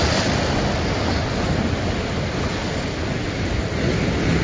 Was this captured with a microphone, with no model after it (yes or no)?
yes